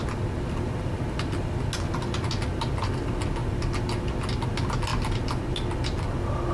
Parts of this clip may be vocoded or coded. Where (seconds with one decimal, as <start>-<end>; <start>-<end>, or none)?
none